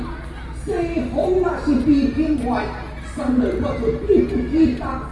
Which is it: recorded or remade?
recorded